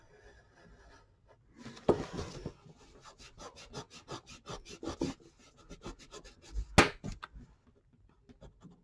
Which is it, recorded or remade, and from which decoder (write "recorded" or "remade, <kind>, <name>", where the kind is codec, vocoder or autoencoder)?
recorded